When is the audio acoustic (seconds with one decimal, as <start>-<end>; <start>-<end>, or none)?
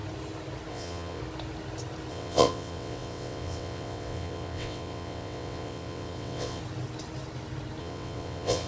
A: 0.0-0.7; 1.2-2.1; 6.6-7.8